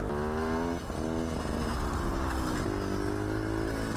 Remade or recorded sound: recorded